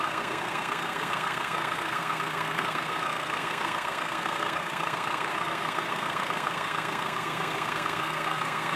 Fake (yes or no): yes